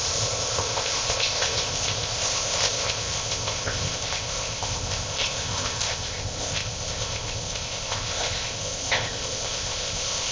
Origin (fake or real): fake